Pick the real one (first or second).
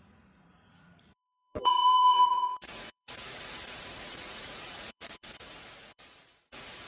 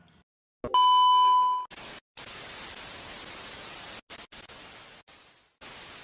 second